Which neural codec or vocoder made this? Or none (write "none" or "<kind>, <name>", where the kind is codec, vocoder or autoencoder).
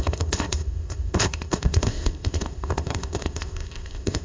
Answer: codec, ZipCodec